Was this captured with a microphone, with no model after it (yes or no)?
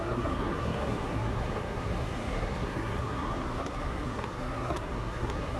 no